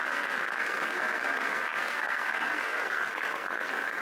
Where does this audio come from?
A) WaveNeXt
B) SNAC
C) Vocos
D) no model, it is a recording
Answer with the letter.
B